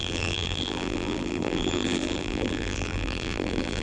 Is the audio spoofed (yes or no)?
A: yes